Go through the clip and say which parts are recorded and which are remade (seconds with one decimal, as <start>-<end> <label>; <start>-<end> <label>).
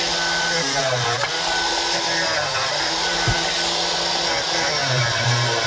0.0-2.5 recorded; 2.5-3.5 remade; 3.5-4.8 recorded; 4.8-5.7 remade